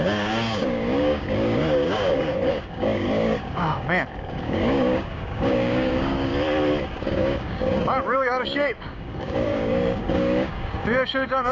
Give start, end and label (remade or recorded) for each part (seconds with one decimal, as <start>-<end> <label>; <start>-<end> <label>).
0.0-6.3 remade; 6.3-6.9 recorded; 6.9-11.5 remade